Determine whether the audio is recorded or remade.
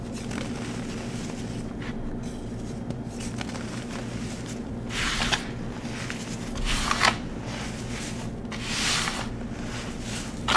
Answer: recorded